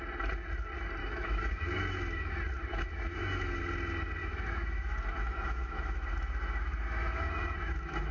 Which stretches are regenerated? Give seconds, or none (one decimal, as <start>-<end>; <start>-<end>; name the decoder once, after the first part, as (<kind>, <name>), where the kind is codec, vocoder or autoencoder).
1.0-2.3 (autoencoder, DAC-VAE); 2.7-3.6; 4.2-8.1